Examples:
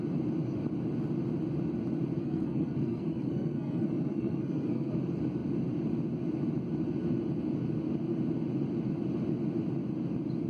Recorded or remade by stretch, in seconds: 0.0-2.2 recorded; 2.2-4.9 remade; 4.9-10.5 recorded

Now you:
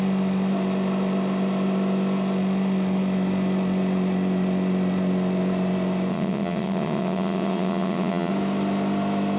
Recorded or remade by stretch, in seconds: 0.0-6.1 recorded; 6.1-8.3 remade; 8.3-9.4 recorded

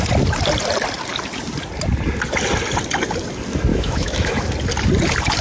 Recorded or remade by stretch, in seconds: 0.0-3.7 recorded; 3.7-4.5 remade; 4.5-5.4 recorded

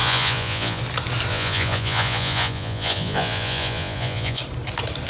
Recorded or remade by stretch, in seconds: 0.0-0.8 remade; 0.8-1.3 recorded; 1.3-4.4 remade; 4.4-5.1 recorded

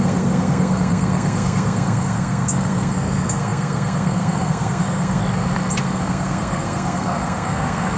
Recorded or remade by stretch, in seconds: 0.0-5.2 remade; 5.2-5.8 recorded; 5.8-8.0 remade

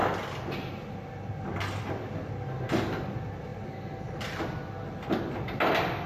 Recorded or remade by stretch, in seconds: 0.0-6.1 recorded